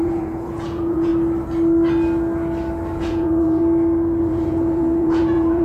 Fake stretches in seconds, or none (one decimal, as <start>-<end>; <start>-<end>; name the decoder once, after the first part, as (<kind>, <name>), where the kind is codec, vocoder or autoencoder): 0.0-1.1 (vocoder, Vocos); 3.0-3.6; 4.2-5.6